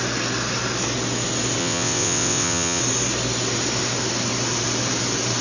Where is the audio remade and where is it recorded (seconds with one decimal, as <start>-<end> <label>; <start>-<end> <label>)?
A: 0.0-1.6 recorded; 1.6-2.8 remade; 2.8-5.4 recorded